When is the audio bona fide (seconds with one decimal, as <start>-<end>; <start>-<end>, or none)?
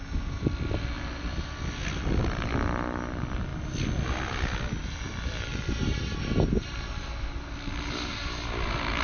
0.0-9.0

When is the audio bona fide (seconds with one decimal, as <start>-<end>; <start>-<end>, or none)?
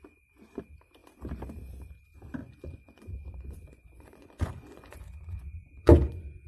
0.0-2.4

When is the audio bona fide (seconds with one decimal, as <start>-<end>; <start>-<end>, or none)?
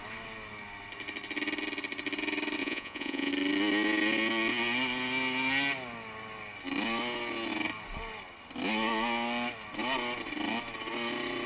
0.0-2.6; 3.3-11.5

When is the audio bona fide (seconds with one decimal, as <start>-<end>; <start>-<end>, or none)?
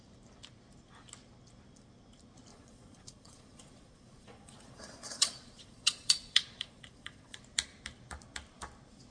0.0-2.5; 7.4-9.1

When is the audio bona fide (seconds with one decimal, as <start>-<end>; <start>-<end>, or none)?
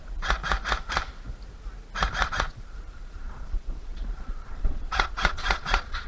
0.0-2.2